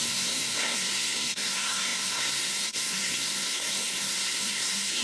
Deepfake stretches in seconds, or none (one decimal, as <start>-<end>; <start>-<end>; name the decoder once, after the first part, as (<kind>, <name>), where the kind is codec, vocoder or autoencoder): 0.0-5.0 (codec, SNAC)